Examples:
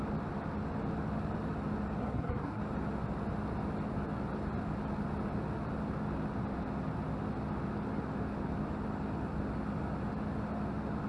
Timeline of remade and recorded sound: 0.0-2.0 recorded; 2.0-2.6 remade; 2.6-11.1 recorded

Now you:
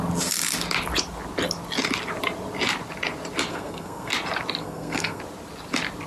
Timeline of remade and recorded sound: 0.0-3.5 recorded; 3.5-4.1 remade; 4.1-4.6 recorded; 4.6-5.2 remade; 5.2-6.1 recorded